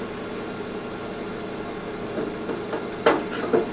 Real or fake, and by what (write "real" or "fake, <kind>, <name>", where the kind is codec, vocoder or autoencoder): real